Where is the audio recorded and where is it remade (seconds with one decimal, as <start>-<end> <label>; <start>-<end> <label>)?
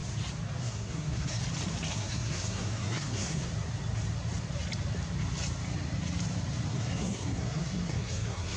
0.0-0.6 recorded; 0.6-1.4 remade; 1.4-1.9 recorded; 1.9-3.5 remade; 3.5-6.7 recorded; 6.7-8.6 remade